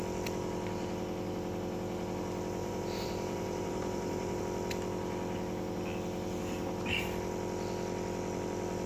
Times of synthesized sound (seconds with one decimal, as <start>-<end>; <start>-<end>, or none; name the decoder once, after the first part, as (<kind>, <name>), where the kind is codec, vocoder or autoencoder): 2.6-4.4 (vocoder, BigVGAN v2)